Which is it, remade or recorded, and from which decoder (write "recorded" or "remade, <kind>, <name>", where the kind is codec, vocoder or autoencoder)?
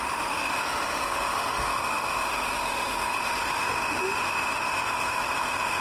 remade, autoencoder, DAC-VAE